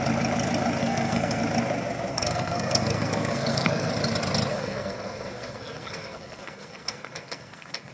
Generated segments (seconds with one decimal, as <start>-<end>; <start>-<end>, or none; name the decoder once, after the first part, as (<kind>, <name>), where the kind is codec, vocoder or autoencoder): 0.8-1.4 (codec, SNAC); 2.1-3.9; 4.5-7.9